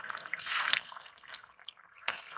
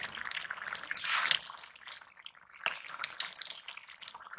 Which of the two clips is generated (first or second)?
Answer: first